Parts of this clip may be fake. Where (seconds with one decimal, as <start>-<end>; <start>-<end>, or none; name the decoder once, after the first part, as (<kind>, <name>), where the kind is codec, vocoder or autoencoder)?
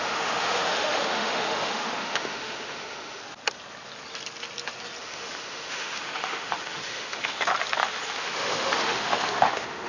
0.0-3.2 (autoencoder, DAC-VAE); 5.0-7.5; 8.2-9.9